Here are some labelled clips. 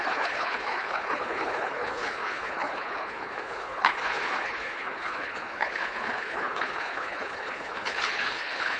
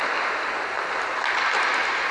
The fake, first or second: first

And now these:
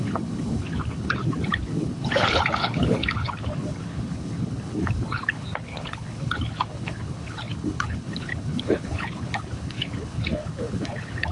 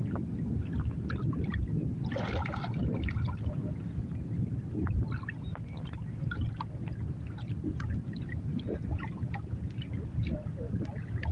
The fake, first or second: first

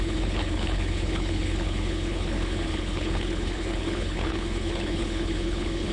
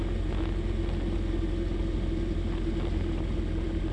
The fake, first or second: first